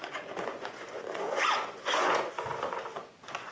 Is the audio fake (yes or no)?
yes